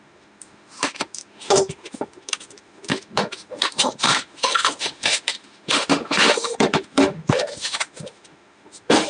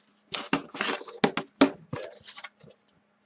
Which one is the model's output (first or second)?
first